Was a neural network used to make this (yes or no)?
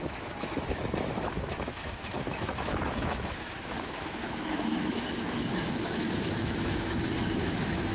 yes